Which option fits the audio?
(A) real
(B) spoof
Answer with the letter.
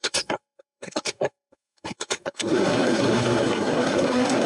B